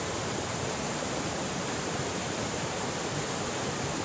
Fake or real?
fake